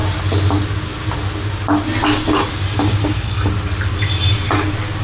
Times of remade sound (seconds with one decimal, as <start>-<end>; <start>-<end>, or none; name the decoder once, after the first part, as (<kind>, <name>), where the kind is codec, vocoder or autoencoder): 3.0-3.5 (codec, SNAC)

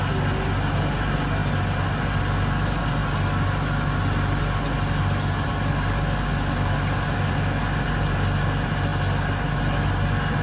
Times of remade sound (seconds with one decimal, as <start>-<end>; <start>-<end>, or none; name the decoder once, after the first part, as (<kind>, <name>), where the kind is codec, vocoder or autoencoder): none

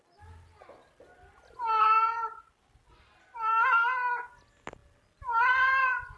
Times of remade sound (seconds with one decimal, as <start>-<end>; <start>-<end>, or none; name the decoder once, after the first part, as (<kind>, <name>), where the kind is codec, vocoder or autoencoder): none

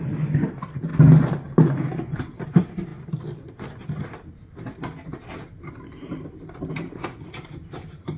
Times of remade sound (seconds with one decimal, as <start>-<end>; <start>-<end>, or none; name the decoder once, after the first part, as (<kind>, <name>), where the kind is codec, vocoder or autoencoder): 0.0-0.9 (vocoder, BigVGAN v2); 2.1-2.9; 6.7-8.2

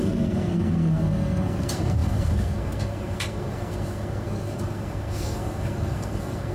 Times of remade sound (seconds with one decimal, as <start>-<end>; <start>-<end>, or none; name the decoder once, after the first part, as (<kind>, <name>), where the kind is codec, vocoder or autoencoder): 0.0-6.5 (codec, SNAC)

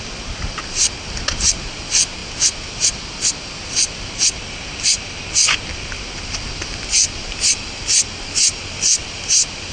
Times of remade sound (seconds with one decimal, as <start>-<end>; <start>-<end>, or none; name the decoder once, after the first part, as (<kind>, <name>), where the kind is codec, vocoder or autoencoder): none